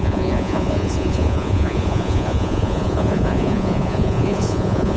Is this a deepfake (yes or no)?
yes